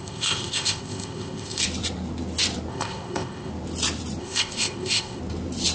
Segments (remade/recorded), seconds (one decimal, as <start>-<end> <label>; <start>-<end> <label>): 0.0-1.6 remade; 1.6-2.7 recorded; 2.7-3.5 remade; 3.5-4.2 recorded; 4.2-5.2 remade; 5.2-5.7 recorded